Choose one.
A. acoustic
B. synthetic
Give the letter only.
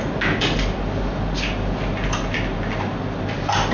A